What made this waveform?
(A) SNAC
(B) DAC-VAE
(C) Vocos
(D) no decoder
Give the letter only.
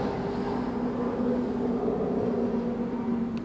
D